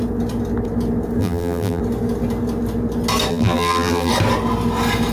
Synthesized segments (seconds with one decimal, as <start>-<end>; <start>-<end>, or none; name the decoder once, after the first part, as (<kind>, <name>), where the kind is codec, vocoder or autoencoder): 1.2-1.8 (vocoder, BigVGAN v2); 3.3-4.1